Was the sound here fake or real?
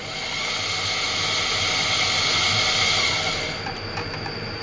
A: real